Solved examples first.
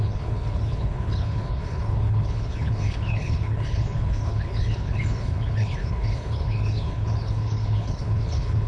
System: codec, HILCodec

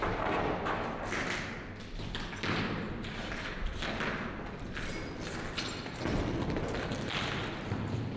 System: none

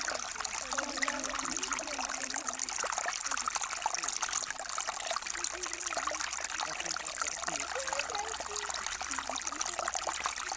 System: none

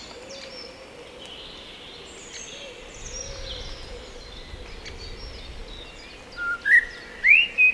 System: none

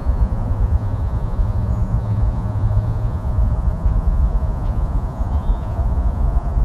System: vocoder, Vocos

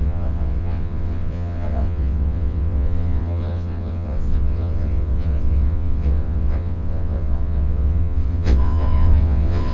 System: vocoder, WaveNeXt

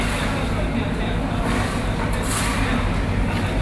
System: none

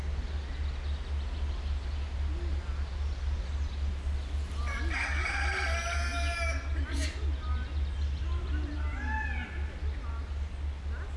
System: none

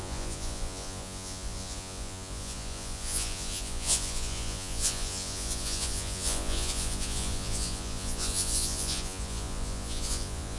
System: vocoder, Vocos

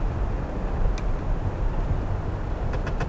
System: none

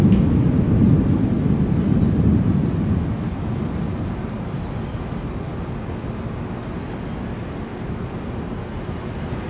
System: none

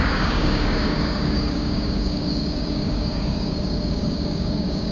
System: codec, DAC